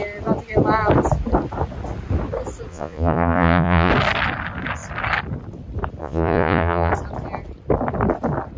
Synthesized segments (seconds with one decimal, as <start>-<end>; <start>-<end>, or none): 2.7-3.9; 6.0-6.9